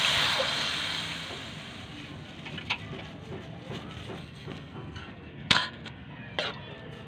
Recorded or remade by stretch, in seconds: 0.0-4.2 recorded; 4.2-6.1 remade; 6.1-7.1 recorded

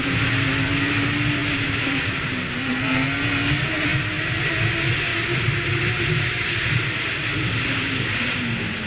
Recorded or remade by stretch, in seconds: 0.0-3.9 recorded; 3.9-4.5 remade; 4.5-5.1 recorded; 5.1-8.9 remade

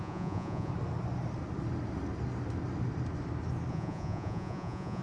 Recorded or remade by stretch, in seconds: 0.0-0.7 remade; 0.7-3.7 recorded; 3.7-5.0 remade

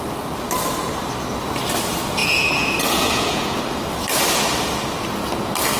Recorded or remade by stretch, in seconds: 0.0-2.2 recorded; 2.2-3.6 remade; 3.6-5.8 recorded

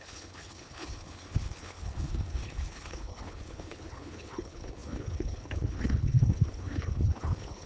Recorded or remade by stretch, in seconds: 0.0-7.7 remade